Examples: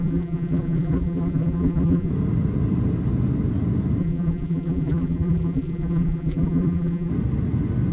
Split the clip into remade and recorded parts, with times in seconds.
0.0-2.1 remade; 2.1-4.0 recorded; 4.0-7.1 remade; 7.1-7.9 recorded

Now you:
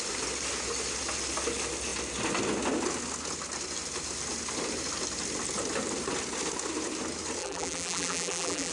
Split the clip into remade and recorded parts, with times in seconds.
0.0-7.4 recorded; 7.4-8.7 remade

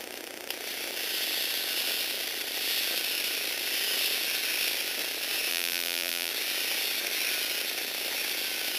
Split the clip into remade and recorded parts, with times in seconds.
0.0-5.5 recorded; 5.5-6.3 remade; 6.3-8.8 recorded

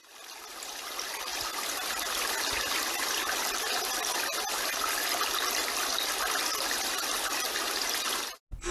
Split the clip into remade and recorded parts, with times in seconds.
0.0-8.7 recorded

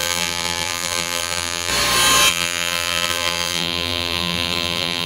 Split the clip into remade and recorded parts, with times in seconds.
0.0-1.7 remade; 1.7-2.3 recorded; 2.3-5.1 remade